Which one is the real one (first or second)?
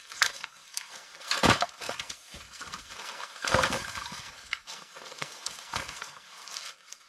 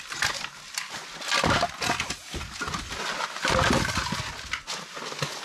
second